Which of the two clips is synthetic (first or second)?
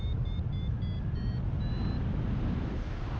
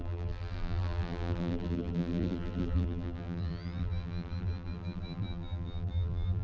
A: second